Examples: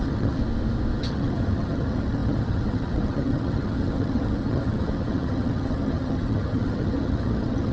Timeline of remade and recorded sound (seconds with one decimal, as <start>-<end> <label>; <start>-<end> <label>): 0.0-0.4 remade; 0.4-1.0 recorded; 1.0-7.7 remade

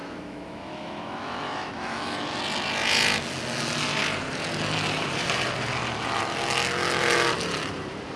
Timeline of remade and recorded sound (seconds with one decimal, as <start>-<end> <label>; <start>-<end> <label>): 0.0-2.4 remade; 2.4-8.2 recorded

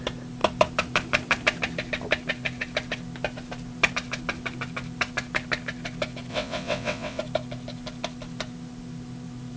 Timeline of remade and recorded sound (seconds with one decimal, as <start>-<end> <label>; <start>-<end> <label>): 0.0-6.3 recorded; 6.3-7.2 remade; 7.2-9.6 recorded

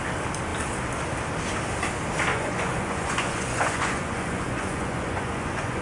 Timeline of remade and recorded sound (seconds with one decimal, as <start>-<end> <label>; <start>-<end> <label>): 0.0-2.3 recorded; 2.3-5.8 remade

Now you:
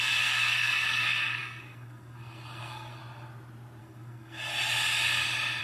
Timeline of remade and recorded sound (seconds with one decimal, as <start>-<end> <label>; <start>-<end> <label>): 0.0-3.0 remade; 3.0-3.8 recorded; 3.8-4.5 remade; 4.5-5.6 recorded

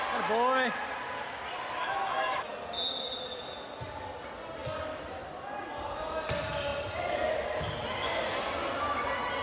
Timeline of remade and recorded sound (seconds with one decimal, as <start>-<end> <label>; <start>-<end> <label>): 0.0-1.8 recorded; 1.8-2.5 remade; 2.5-9.4 recorded

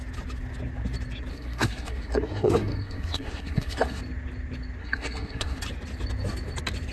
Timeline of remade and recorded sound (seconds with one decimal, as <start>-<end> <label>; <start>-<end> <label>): 0.0-1.3 recorded; 1.3-4.0 remade; 4.0-4.8 recorded; 4.8-5.6 remade; 5.6-6.9 recorded